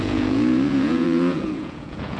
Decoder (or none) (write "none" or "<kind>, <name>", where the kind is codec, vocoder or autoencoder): vocoder, Vocos